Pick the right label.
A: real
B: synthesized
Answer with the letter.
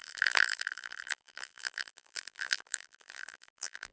B